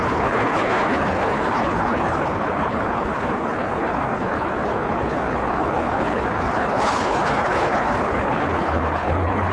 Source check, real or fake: fake